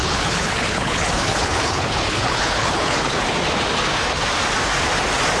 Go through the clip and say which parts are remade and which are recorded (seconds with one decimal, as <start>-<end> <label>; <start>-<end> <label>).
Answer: 0.0-3.2 remade; 3.2-5.4 recorded